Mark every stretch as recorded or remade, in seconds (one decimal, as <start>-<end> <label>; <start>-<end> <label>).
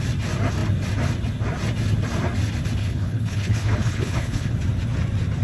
0.0-2.8 recorded; 2.8-4.5 remade; 4.5-5.4 recorded